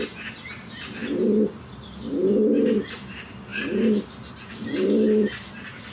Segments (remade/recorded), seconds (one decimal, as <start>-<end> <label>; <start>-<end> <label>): 0.0-5.9 recorded